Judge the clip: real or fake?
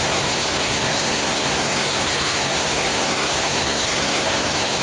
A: fake